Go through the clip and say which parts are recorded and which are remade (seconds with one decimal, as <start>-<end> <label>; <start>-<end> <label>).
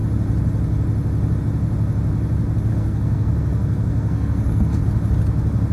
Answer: 0.0-2.7 recorded; 2.7-4.8 remade; 4.8-5.7 recorded